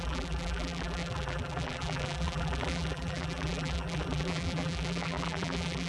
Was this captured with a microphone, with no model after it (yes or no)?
no